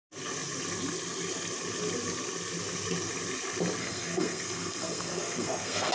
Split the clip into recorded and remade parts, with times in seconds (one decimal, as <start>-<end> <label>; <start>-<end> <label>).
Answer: 0.0-3.8 recorded; 3.8-5.9 remade